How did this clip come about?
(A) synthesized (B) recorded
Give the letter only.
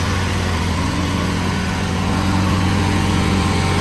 A